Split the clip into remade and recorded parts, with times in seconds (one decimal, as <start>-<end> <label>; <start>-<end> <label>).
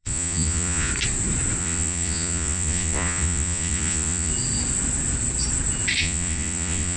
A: 0.0-0.9 remade; 0.9-1.6 recorded; 1.6-4.3 remade; 4.3-6.0 recorded; 6.0-7.0 remade